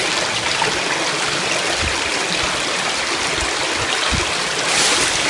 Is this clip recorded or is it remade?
recorded